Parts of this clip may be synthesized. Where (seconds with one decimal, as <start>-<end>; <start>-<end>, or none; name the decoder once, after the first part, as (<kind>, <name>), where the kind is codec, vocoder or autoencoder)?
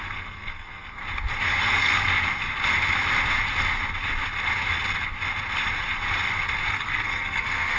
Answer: 0.0-1.0 (codec, SNAC); 1.6-2.0; 6.7-7.8